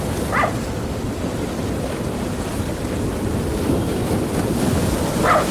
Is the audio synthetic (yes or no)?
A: no